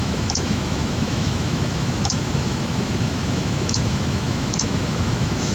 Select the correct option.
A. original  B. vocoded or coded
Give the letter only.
B